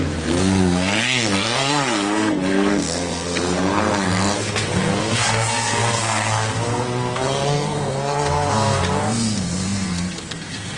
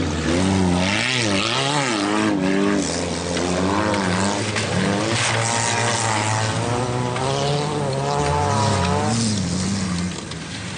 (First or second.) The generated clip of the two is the first